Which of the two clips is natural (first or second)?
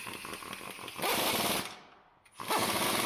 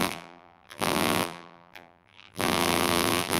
first